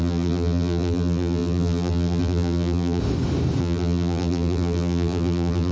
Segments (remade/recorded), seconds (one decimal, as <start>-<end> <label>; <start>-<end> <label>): 0.0-3.0 remade; 3.0-3.6 recorded; 3.6-5.7 remade